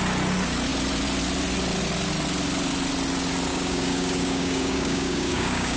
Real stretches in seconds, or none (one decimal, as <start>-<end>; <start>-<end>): 0.0-3.5